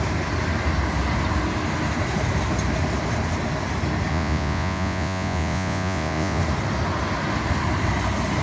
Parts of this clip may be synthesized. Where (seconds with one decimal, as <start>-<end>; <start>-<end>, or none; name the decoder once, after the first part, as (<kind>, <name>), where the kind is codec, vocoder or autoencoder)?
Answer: 4.1-6.4 (vocoder, Vocos)